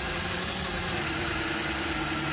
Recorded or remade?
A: recorded